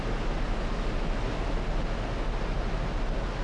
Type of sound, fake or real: real